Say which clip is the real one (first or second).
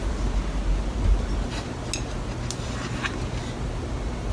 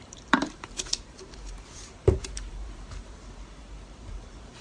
first